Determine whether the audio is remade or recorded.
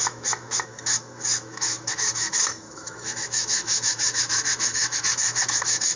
remade